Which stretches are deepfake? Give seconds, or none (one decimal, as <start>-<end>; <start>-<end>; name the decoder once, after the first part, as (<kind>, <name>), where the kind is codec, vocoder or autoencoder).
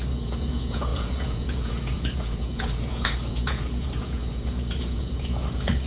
0.0-5.9 (vocoder, Vocos)